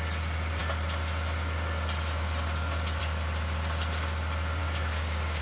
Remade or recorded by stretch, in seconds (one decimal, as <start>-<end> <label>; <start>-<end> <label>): 0.0-4.6 recorded; 4.6-5.4 remade